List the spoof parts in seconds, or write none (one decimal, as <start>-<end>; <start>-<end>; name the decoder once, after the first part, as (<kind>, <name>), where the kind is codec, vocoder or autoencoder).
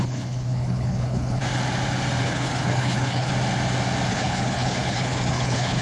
0.0-1.4 (codec, HILCodec); 2.2-3.3; 4.1-5.8